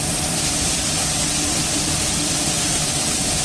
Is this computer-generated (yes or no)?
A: yes